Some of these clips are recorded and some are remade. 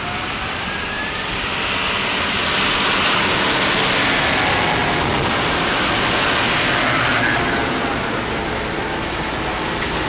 recorded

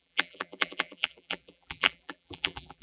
remade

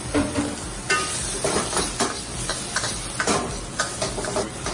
recorded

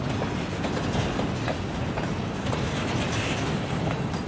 recorded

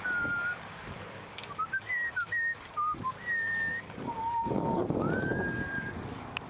remade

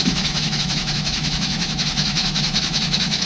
remade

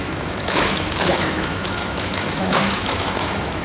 remade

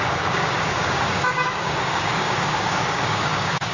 remade